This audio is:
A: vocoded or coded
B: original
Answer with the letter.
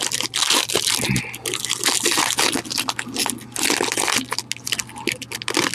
B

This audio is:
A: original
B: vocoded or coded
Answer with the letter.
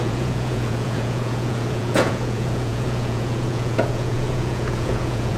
B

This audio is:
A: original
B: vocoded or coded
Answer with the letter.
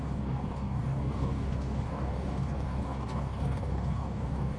B